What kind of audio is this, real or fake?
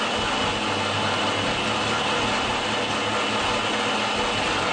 real